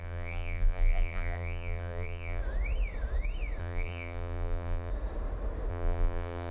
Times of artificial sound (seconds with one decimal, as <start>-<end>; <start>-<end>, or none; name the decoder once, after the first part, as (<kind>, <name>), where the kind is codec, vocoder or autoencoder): 0.0-2.4 (vocoder, BigVGAN v2); 3.6-4.9; 5.7-6.5